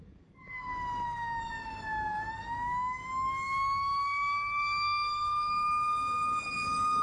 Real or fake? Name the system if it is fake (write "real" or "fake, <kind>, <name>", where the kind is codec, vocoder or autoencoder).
fake, codec, DAC